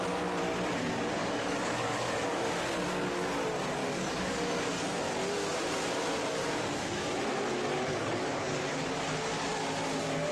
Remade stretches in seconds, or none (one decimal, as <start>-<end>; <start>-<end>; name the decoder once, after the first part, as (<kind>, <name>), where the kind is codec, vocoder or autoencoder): 1.2-2.5 (codec, DAC); 3.8-5.0; 7.7-9.1